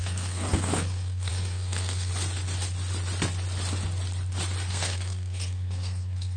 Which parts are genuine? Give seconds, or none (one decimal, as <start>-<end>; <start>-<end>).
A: 2.1-4.7